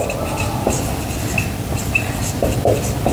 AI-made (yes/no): no